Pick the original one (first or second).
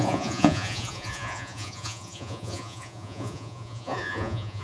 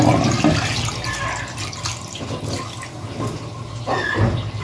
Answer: second